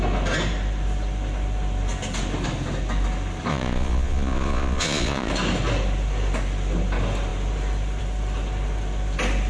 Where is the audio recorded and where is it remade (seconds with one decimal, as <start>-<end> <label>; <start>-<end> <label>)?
0.0-3.5 recorded; 3.5-5.3 remade; 5.3-9.5 recorded